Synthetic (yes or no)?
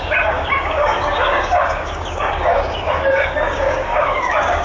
yes